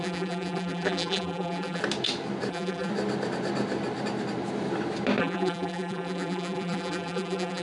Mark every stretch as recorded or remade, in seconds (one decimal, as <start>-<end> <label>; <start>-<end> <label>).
0.0-1.8 remade; 1.8-2.5 recorded; 2.5-2.9 remade; 2.9-5.2 recorded; 5.2-7.6 remade